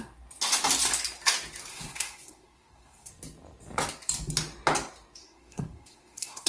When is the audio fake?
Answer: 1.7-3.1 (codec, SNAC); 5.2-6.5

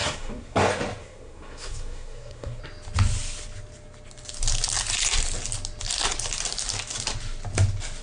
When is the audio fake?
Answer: 0.0-0.6 (codec, SNAC); 1.0-2.6

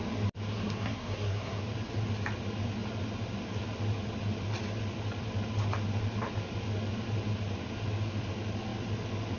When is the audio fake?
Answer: 0.5-1.6 (codec, SNAC)